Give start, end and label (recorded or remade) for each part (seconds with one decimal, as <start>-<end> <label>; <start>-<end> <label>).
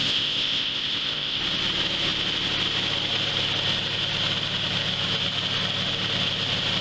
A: 0.0-1.4 remade; 1.4-6.8 recorded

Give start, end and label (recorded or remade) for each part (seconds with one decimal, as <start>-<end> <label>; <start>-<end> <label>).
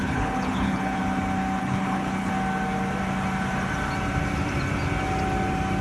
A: 0.0-1.0 remade; 1.0-1.6 recorded; 1.6-2.3 remade; 2.3-5.8 recorded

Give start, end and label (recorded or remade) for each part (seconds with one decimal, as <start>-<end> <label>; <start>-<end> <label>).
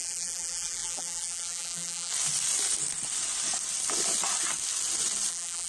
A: 0.0-2.1 remade; 2.1-5.3 recorded; 5.3-5.7 remade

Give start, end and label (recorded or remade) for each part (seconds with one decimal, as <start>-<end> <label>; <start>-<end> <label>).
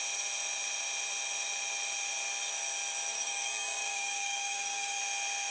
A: 0.0-3.1 recorded; 3.1-5.0 remade; 5.0-5.5 recorded